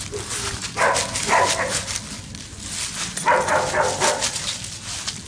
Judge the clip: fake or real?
real